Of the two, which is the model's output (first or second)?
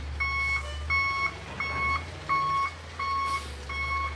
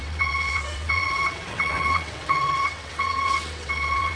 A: second